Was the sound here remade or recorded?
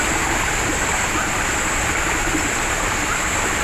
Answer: recorded